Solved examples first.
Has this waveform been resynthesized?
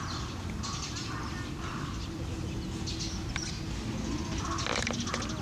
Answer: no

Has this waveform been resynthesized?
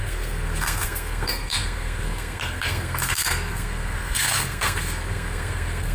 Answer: yes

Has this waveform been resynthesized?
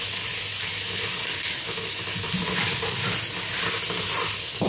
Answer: no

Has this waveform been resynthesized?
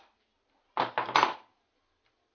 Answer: no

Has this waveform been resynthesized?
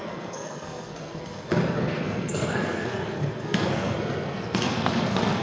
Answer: yes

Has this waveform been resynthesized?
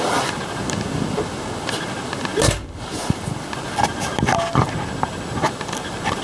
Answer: no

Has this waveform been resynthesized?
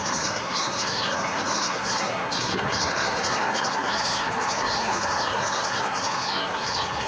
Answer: yes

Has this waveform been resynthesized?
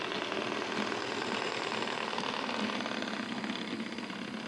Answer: no